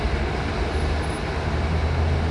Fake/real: real